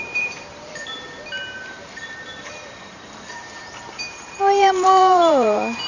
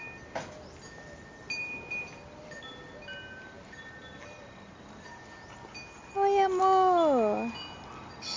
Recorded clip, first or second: second